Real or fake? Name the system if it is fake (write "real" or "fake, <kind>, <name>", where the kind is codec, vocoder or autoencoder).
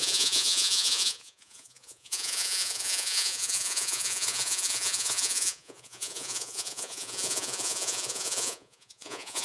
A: fake, vocoder, Vocos